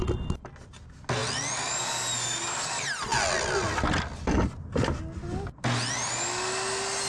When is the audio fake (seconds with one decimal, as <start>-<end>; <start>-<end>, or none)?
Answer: none